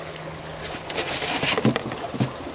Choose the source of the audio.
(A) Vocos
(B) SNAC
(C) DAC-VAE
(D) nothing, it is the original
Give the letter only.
D